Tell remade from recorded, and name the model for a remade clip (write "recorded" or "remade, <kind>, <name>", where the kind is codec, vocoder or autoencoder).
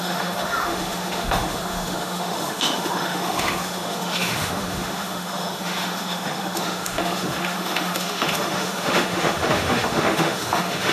remade, autoencoder, DAC-VAE